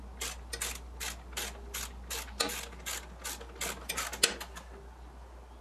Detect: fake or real real